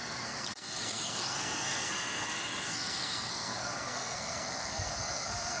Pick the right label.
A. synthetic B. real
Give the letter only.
A